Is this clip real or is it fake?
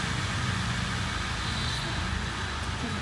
fake